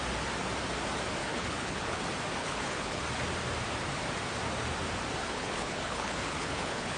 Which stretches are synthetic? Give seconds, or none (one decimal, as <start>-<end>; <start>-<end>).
1.2-2.0; 2.4-3.0; 5.2-7.0